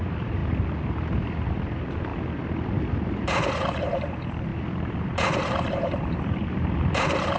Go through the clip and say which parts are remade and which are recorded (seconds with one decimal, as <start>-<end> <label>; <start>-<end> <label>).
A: 0.0-0.4 remade; 0.4-1.5 recorded; 1.5-2.1 remade; 2.1-3.2 recorded; 3.2-4.5 remade; 4.5-5.0 recorded; 5.0-7.4 remade